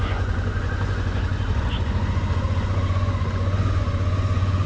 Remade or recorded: remade